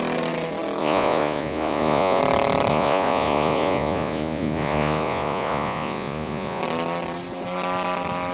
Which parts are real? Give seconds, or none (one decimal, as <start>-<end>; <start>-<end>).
0.0-0.8; 2.2-2.7; 6.6-8.3